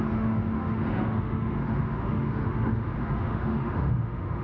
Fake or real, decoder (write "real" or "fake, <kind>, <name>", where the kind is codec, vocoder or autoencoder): fake, autoencoder, DAC-VAE